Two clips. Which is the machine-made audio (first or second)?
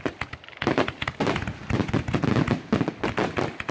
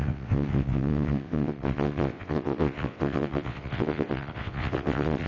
second